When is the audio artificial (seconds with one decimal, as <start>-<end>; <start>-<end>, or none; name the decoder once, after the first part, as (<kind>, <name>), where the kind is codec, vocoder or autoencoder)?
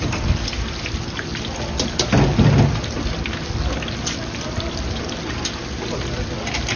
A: none